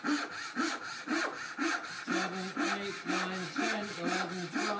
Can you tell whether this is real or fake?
real